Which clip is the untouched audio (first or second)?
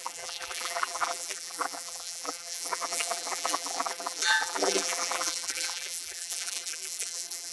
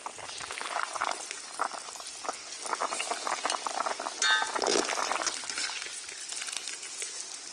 second